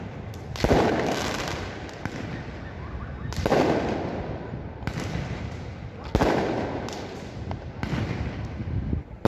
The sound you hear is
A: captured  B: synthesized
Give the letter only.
A